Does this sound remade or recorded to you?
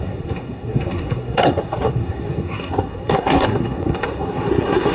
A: remade